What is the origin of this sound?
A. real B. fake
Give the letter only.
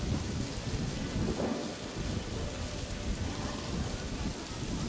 A